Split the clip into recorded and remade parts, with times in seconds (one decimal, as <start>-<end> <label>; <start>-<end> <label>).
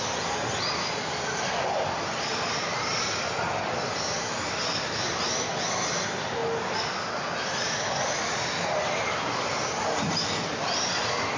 0.0-11.4 recorded